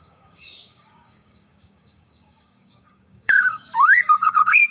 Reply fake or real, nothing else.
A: fake